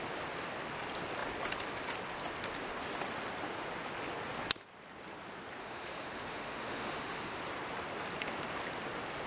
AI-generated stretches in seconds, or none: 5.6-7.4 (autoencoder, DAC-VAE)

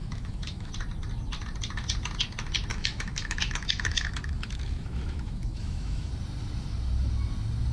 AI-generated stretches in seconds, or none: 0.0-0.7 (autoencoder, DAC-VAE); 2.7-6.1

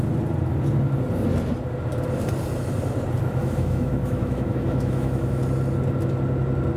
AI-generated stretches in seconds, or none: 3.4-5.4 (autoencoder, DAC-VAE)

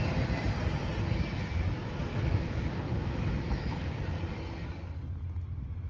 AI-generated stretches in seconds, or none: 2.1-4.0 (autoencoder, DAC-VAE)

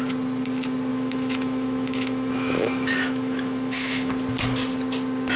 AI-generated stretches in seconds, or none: 0.9-4.1 (autoencoder, DAC-VAE)

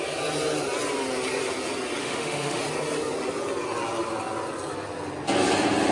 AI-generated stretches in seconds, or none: 2.0-2.6 (autoencoder, DAC-VAE)